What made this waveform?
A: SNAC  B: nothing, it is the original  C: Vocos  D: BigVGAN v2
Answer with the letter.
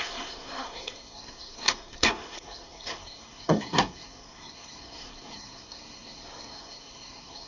A